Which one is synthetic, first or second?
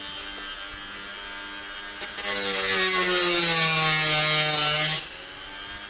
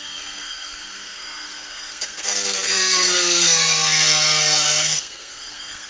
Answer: second